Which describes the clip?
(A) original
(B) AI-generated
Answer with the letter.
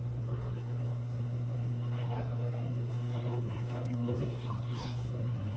B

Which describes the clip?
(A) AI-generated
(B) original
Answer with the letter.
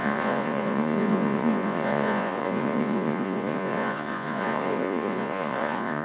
A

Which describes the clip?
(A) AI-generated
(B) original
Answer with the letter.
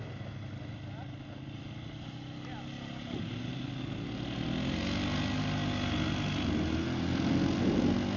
B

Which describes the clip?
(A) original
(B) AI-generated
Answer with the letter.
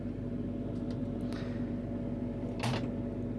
A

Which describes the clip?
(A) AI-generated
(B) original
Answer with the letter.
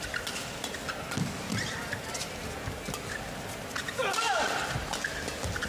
B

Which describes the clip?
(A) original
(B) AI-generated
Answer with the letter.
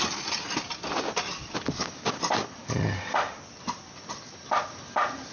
A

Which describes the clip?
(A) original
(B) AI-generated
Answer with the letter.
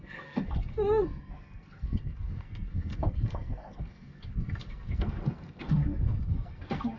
B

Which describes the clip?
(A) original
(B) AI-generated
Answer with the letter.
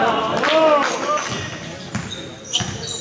A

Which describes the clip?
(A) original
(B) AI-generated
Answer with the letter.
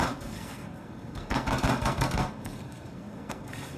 B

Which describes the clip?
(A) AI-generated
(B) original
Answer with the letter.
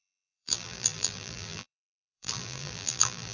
A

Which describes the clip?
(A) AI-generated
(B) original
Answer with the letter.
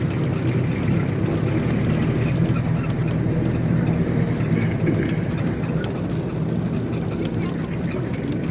B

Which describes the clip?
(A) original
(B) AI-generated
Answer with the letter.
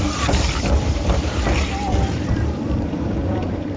B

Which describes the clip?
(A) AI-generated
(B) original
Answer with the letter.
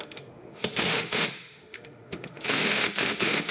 A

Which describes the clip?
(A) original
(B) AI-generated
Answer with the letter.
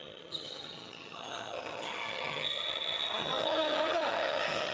B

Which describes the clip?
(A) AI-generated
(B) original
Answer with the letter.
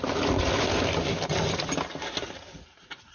B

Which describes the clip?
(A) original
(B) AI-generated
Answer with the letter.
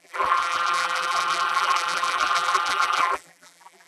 B